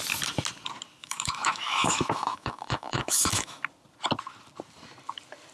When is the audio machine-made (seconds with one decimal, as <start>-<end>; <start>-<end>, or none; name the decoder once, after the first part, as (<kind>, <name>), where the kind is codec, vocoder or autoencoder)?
1.0-3.6 (autoencoder, DAC-VAE)